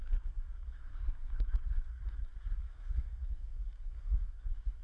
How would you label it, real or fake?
fake